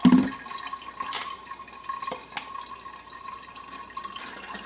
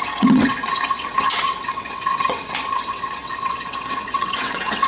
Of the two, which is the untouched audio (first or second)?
first